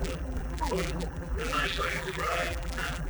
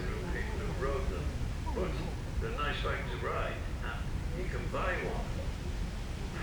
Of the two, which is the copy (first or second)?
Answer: first